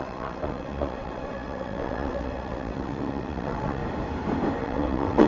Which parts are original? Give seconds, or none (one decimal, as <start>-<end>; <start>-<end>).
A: 3.8-4.6